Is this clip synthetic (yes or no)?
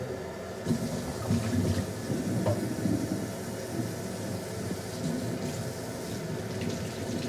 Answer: no